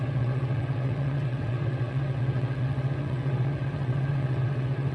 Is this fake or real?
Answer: fake